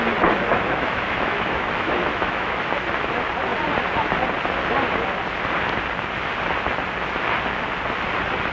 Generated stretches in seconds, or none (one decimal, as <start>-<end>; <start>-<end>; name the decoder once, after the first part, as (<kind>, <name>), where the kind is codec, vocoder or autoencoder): 0.5-2.6 (autoencoder, DAC-VAE)